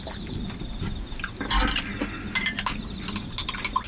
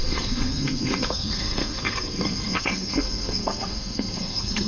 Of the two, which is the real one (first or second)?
first